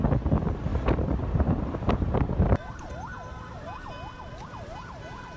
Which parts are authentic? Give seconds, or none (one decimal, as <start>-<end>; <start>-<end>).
0.0-0.7; 3.9-5.4